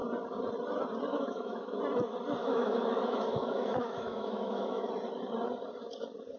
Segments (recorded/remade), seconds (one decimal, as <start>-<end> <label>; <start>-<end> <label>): 0.0-1.1 recorded; 1.1-1.8 remade; 1.8-2.4 recorded; 2.4-4.9 remade; 4.9-6.4 recorded